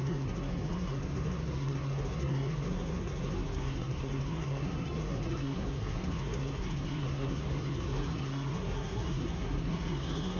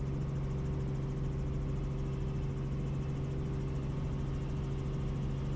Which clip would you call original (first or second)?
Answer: second